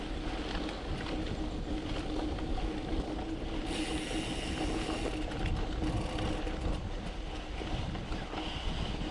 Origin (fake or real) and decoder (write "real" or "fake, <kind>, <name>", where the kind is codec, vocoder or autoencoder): real